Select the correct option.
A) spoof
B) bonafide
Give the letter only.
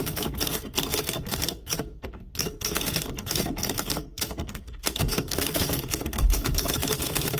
A